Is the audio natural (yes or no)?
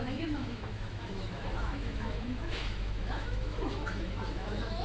no